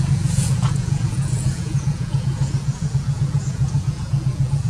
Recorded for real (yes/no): no